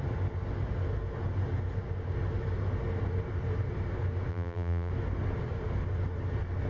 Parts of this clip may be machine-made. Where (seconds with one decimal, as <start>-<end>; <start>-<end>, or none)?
4.3-4.9